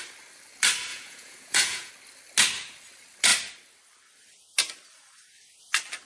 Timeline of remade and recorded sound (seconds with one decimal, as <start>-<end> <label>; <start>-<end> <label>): 0.0-0.9 recorded; 0.9-1.9 remade; 1.9-6.1 recorded